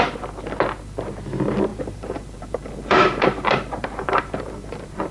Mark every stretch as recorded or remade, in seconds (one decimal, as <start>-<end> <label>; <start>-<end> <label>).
0.0-1.7 recorded; 1.7-5.1 remade